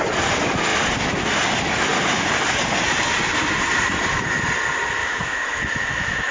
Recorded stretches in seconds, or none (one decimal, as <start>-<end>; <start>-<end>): 0.0-5.0